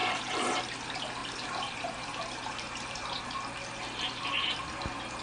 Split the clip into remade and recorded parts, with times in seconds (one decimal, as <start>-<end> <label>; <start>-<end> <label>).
0.0-0.6 remade; 0.6-1.2 recorded; 1.2-3.2 remade; 3.2-5.2 recorded